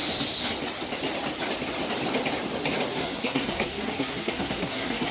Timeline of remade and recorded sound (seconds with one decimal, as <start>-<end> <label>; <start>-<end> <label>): 0.0-2.9 recorded; 2.9-5.1 remade